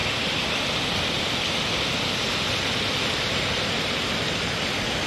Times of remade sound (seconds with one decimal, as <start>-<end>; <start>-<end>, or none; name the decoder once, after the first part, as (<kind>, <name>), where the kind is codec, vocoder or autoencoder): none